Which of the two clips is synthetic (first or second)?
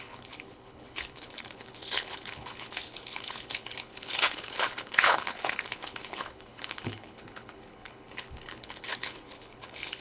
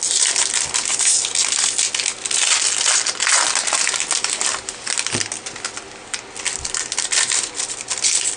first